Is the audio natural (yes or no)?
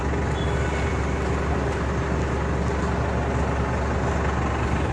yes